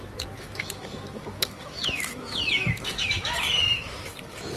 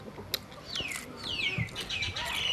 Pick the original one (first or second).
second